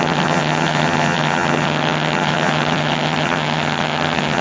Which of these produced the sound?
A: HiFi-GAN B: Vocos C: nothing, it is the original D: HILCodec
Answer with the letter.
A